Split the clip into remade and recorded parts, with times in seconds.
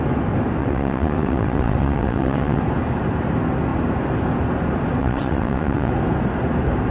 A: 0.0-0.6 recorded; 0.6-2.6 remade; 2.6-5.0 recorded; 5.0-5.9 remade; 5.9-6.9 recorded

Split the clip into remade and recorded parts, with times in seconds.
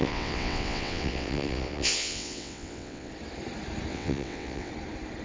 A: 0.0-3.1 remade; 3.1-3.9 recorded; 3.9-4.7 remade; 4.7-5.2 recorded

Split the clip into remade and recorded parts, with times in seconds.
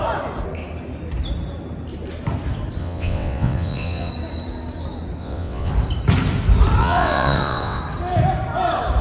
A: 0.0-2.8 recorded; 2.8-4.1 remade; 4.1-5.2 recorded; 5.2-5.7 remade; 5.7-6.8 recorded; 6.8-7.8 remade; 7.8-9.0 recorded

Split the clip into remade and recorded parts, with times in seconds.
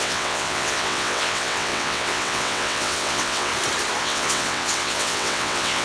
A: 0.0-3.5 remade; 3.5-4.0 recorded; 4.0-5.8 remade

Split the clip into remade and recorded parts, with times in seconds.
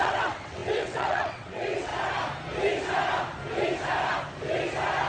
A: 0.0-1.9 remade; 1.9-5.1 recorded